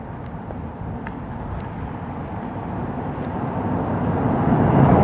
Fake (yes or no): no